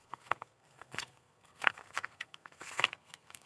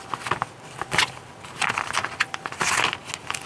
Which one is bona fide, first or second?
second